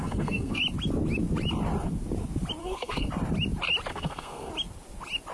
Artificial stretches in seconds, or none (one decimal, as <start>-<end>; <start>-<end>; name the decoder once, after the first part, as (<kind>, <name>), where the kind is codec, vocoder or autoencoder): 0.0-0.6 (codec, SNAC); 2.6-3.1; 3.9-4.5